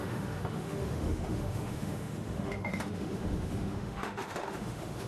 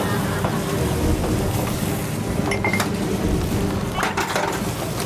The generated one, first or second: first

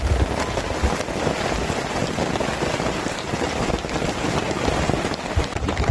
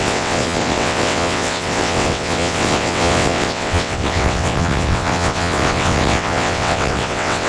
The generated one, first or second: second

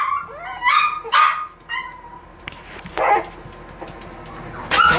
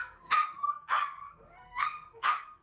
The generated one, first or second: second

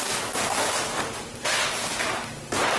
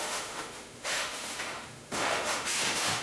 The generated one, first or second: second